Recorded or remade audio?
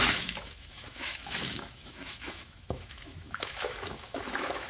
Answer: remade